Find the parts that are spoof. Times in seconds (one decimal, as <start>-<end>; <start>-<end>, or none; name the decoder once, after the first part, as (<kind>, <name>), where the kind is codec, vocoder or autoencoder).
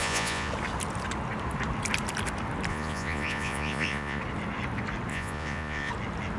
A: 0.0-0.5 (vocoder, Vocos); 2.7-4.2; 5.1-5.9